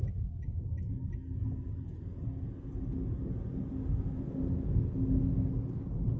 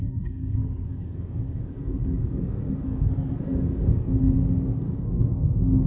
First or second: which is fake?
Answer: second